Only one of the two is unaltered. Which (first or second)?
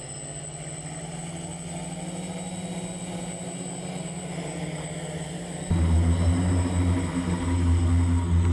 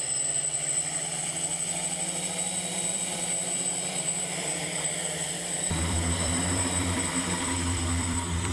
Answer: first